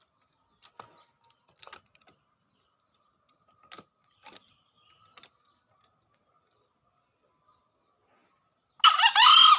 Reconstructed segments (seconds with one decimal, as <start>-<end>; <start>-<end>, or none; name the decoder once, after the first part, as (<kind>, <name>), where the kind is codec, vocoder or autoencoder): none